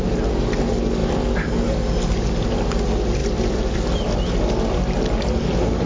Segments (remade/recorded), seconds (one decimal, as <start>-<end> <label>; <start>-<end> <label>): 0.0-1.0 recorded; 1.0-1.7 remade; 1.7-3.2 recorded; 3.2-4.1 remade; 4.1-5.9 recorded